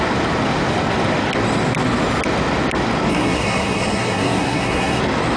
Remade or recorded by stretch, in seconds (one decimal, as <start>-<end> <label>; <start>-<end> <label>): 0.0-3.1 recorded; 3.1-5.0 remade; 5.0-5.4 recorded

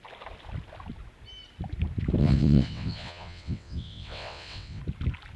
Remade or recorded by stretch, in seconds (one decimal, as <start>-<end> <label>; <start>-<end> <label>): 0.0-2.2 recorded; 2.2-4.8 remade; 4.8-5.4 recorded

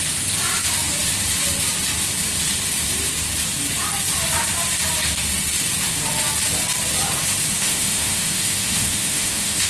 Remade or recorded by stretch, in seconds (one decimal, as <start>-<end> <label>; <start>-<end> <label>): 0.0-7.6 recorded; 7.6-9.7 remade

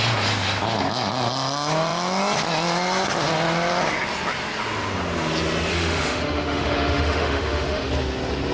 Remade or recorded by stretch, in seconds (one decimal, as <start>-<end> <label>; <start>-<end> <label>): 0.0-5.7 recorded; 5.7-7.9 remade; 7.9-8.5 recorded

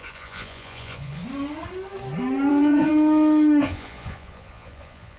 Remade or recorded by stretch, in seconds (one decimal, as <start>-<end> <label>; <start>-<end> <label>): 0.0-1.2 remade; 1.2-2.5 recorded; 2.5-2.9 remade; 2.9-3.6 recorded; 3.6-5.2 remade

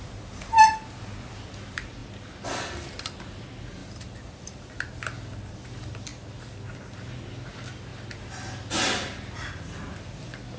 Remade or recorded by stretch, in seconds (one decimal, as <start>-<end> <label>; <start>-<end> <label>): 0.0-3.8 recorded; 3.8-4.7 remade; 4.7-10.6 recorded

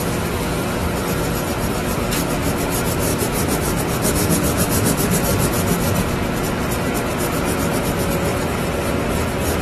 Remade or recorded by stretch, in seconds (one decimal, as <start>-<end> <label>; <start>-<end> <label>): 0.0-3.1 recorded; 3.1-3.8 remade; 3.8-8.3 recorded; 8.3-8.9 remade; 8.9-9.6 recorded

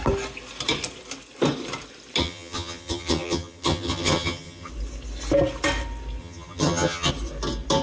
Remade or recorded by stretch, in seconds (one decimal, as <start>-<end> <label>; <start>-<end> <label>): 0.0-2.2 recorded; 2.2-4.7 remade; 4.7-6.2 recorded; 6.2-7.1 remade; 7.1-7.8 recorded